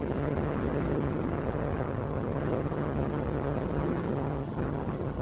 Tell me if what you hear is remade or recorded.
remade